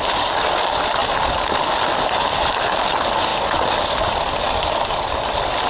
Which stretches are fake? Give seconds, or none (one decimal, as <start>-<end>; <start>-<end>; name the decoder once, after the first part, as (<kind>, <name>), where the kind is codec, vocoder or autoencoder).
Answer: 1.0-2.2 (vocoder, BigVGAN v2); 3.3-4.1